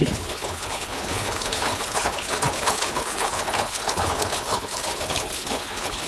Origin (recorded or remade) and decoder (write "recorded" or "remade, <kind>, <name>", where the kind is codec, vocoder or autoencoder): remade, codec, HILCodec